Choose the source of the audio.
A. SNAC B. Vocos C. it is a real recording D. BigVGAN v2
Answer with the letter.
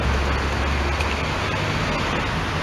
C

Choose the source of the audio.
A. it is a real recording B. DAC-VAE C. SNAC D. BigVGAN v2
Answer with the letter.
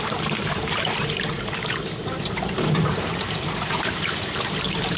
D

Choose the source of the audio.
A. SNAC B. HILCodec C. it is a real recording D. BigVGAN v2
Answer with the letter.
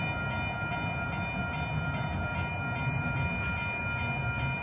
C